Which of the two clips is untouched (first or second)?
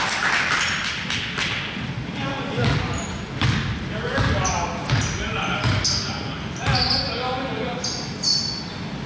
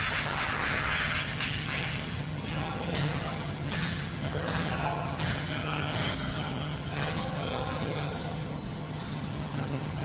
first